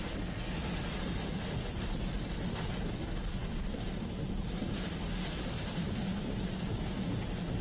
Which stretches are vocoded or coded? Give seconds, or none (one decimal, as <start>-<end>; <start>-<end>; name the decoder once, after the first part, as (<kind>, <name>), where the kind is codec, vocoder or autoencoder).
3.4-3.9 (vocoder, BigVGAN v2); 4.6-6.7